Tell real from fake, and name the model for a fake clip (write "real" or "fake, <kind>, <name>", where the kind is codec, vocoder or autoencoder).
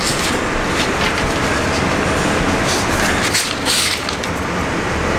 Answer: real